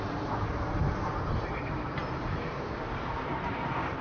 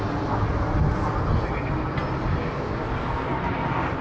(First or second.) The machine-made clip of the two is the first